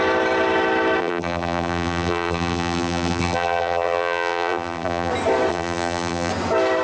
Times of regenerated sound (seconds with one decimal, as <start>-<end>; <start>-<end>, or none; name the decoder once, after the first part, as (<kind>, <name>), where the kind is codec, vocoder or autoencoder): 1.0-5.1 (vocoder, BigVGAN v2); 5.5-6.3